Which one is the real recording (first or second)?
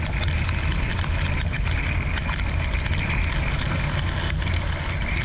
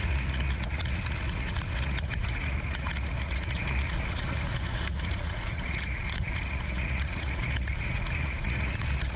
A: first